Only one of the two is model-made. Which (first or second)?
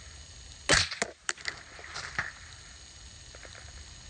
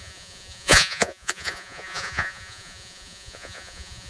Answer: second